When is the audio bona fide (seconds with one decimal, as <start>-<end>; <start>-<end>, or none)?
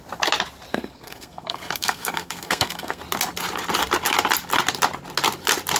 0.0-0.7; 3.0-5.8